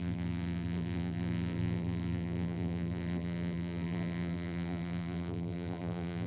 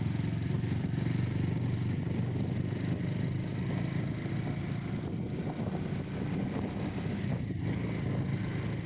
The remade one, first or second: first